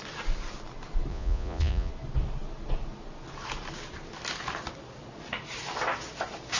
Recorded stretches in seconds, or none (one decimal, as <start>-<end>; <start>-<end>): 0.0-1.1; 1.9-6.6